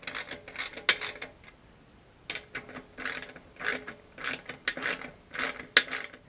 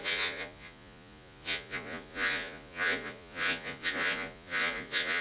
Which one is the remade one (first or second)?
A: second